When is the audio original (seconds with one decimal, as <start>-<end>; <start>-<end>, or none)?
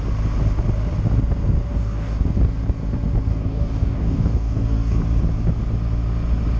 0.0-1.7; 2.2-3.3; 5.0-6.6